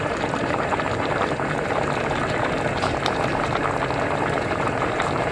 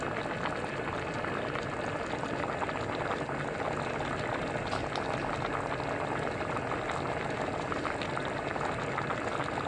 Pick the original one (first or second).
second